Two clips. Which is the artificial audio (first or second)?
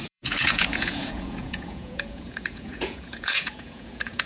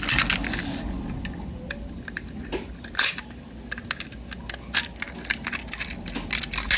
first